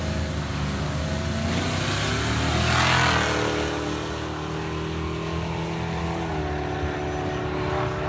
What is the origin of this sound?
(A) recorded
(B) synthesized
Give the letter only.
A